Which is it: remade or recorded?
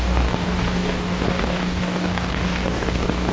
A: remade